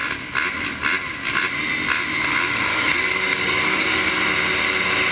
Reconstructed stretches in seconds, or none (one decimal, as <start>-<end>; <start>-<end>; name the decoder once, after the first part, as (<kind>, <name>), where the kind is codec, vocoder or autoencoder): 2.7-4.1 (codec, DAC)